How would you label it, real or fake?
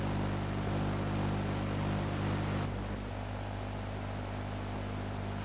real